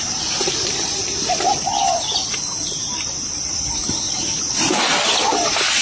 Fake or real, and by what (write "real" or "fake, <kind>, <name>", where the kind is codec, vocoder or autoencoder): real